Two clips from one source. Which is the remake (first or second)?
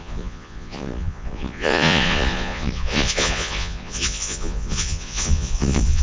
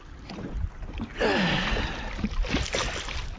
first